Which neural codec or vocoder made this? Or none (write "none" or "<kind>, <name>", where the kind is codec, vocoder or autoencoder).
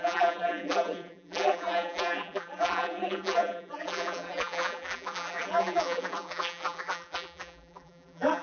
vocoder, BigVGAN v2